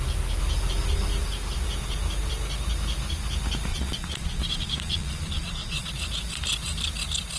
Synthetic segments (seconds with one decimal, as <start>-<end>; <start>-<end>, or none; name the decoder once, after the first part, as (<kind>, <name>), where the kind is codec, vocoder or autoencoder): 3.7-5.9 (vocoder, Vocos)